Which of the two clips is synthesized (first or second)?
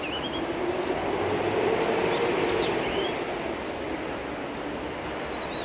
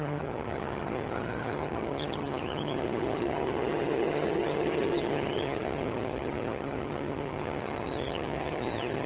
second